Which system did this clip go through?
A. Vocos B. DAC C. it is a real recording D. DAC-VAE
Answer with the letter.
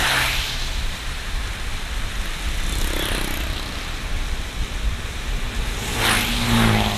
C